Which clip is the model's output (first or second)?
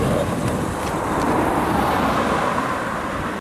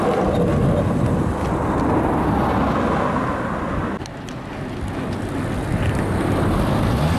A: first